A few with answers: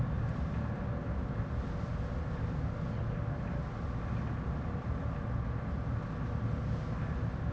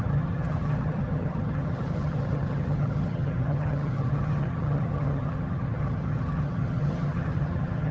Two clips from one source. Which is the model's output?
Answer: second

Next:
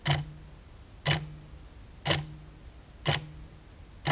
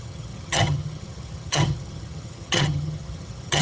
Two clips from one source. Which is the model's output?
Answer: second